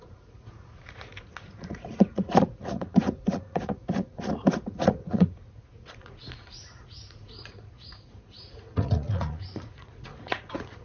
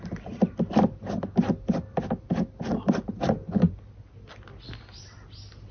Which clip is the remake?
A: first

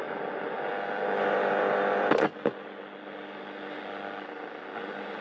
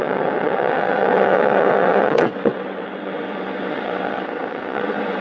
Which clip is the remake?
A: second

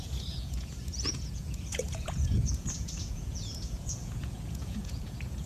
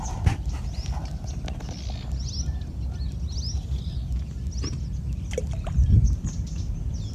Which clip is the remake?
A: first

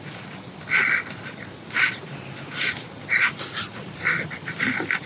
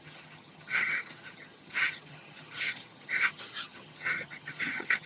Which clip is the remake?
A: second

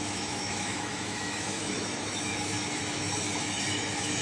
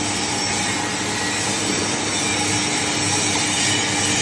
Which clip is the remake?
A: first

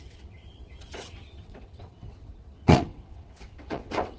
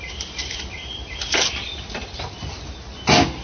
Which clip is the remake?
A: first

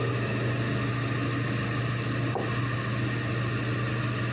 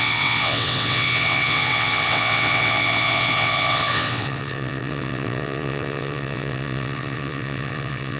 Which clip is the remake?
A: second